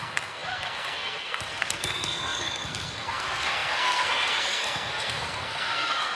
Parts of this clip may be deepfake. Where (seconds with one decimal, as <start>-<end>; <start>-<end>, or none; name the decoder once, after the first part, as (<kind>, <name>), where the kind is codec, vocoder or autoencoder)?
0.0-6.2 (codec, SNAC)